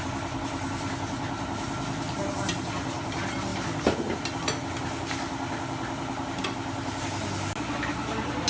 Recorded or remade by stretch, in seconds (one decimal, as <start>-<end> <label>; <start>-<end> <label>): 0.0-8.5 recorded